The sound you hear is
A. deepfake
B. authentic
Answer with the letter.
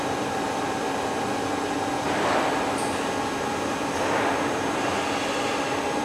B